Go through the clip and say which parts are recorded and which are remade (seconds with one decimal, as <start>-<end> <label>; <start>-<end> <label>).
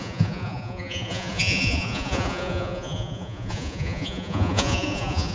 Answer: 0.0-5.3 remade